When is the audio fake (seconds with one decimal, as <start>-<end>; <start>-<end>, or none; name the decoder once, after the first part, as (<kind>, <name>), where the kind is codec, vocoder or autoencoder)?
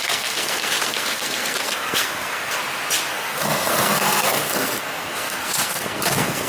0.0-2.6 (codec, SNAC); 3.1-6.5